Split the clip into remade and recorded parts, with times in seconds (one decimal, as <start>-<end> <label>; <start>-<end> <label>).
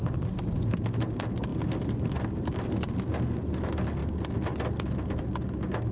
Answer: 0.0-5.9 recorded